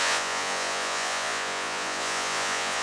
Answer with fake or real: fake